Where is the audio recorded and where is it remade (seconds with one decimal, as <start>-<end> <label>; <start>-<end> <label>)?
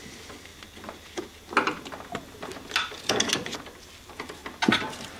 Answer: 0.0-5.2 recorded